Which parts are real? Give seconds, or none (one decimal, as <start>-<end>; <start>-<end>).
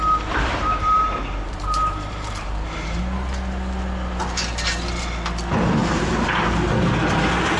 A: 3.0-5.8; 6.9-7.6